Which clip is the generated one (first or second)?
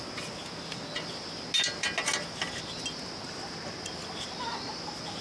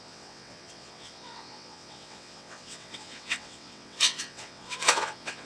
second